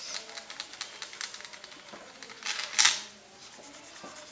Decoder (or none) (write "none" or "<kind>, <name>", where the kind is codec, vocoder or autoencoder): none